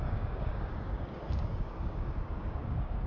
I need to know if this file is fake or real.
fake